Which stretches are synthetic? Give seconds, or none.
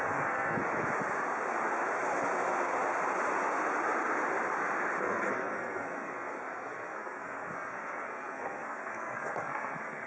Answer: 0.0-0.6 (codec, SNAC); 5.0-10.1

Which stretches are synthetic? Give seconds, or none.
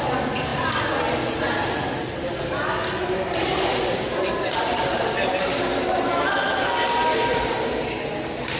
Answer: none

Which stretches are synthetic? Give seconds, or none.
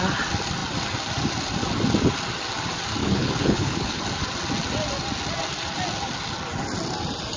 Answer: 3.0-4.0 (codec, HILCodec)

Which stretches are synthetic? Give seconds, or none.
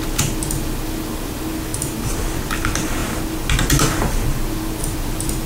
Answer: 1.7-2.4 (vocoder, BigVGAN v2)